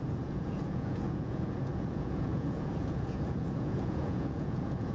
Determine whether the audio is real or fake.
fake